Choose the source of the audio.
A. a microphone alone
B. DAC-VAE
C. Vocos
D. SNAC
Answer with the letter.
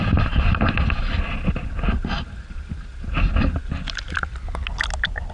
A